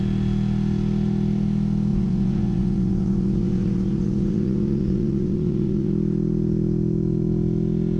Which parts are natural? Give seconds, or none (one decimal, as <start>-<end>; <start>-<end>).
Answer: 0.0-1.9; 5.9-8.0